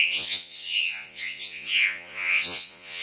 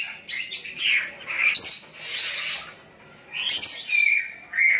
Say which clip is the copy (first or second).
first